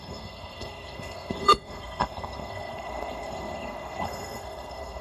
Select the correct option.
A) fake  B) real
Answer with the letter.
A